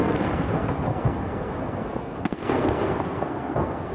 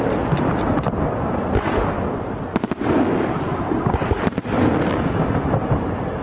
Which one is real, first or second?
second